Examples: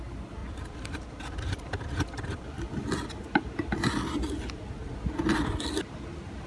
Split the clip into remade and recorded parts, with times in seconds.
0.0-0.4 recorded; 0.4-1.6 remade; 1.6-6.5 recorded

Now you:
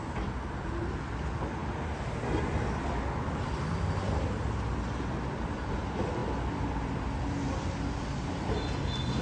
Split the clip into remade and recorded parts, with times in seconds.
0.0-9.2 recorded

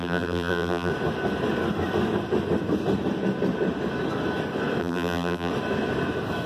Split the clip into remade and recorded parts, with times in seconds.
0.0-0.9 remade; 0.9-4.8 recorded; 4.8-5.5 remade; 5.5-6.5 recorded

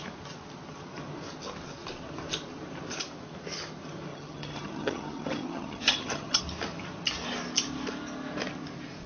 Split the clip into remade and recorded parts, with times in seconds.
0.0-4.1 recorded; 4.1-6.4 remade; 6.4-9.1 recorded

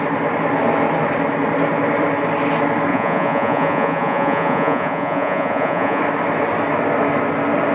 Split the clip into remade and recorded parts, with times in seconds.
0.0-2.9 recorded; 2.9-6.0 remade; 6.0-7.7 recorded